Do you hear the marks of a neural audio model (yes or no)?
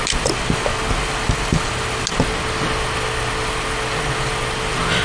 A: no